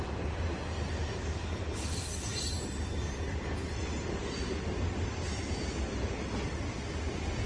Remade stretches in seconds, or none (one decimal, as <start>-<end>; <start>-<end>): none